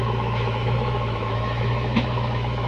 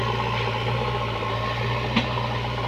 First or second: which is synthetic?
first